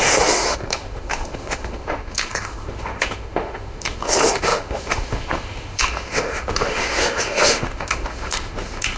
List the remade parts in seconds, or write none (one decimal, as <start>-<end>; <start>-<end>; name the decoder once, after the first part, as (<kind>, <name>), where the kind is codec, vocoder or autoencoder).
0.0-9.0 (autoencoder, DAC-VAE)